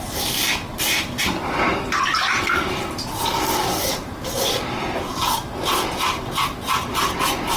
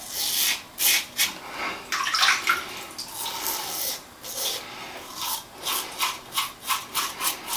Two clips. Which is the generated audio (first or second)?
first